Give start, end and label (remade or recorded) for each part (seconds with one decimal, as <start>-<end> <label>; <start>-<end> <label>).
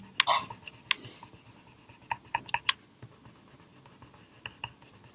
0.0-5.1 recorded